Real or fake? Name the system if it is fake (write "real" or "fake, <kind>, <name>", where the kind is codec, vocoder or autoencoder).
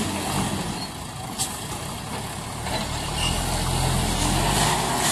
real